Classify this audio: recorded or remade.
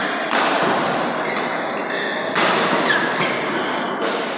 recorded